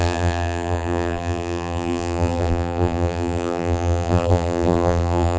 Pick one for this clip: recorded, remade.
remade